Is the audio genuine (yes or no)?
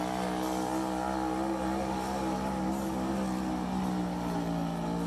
yes